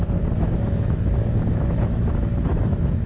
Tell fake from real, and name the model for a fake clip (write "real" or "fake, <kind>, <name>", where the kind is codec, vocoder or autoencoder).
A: fake, autoencoder, DAC-VAE